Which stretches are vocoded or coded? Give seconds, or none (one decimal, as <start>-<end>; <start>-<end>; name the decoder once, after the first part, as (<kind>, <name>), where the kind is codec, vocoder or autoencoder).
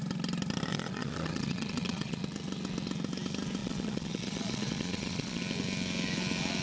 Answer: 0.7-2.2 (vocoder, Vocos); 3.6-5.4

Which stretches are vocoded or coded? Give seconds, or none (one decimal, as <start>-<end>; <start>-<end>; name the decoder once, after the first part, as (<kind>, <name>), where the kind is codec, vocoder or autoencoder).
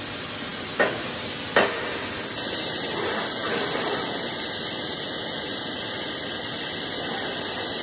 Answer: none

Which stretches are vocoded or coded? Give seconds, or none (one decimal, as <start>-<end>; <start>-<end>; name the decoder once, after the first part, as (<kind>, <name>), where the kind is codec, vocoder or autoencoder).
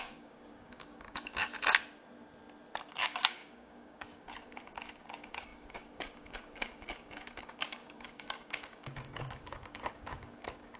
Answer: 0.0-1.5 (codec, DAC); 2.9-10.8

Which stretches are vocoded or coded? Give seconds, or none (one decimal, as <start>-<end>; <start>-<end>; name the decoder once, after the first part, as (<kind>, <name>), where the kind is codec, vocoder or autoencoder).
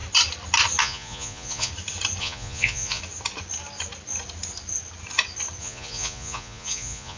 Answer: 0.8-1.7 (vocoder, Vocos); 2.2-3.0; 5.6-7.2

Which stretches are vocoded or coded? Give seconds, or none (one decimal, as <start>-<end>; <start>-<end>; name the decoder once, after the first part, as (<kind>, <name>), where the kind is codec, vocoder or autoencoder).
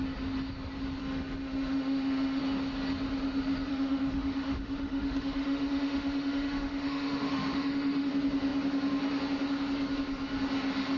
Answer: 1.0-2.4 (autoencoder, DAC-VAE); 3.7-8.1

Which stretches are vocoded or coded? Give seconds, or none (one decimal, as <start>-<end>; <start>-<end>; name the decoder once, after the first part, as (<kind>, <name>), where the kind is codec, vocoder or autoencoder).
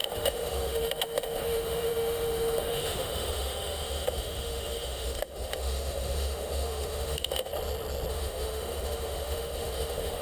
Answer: 0.0-7.5 (autoencoder, DAC-VAE); 8.1-10.2